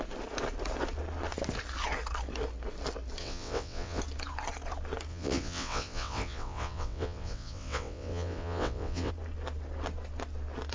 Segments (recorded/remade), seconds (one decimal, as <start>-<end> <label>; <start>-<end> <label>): 0.0-3.2 recorded; 3.2-4.0 remade; 4.0-5.1 recorded; 5.1-9.1 remade; 9.1-10.7 recorded